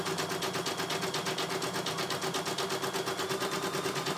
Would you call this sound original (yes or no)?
yes